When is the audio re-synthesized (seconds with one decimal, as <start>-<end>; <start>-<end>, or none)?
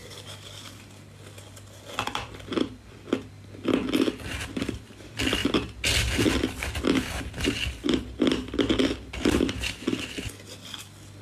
0.0-0.8